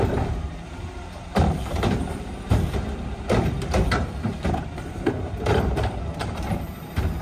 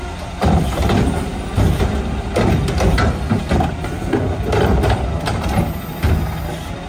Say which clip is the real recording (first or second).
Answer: second